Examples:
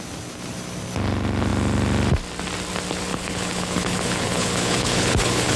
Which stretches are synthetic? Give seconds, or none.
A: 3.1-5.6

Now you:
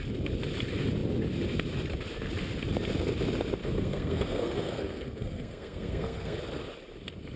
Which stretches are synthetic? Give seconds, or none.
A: 3.6-6.4

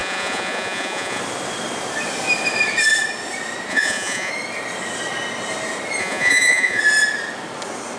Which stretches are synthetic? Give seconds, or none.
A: 0.0-1.2; 3.7-4.3; 6.0-6.8

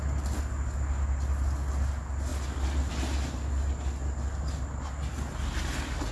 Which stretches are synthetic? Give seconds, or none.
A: none

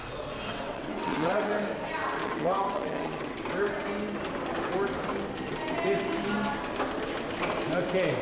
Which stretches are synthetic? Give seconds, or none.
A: 0.5-1.5; 2.2-3.4

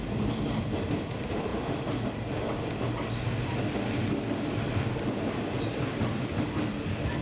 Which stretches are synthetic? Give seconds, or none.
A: none

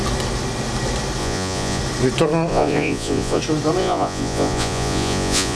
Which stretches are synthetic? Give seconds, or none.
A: 1.2-1.8; 2.5-3.4; 3.8-5.6